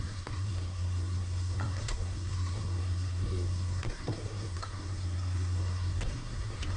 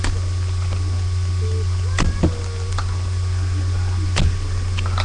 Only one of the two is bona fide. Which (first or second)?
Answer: second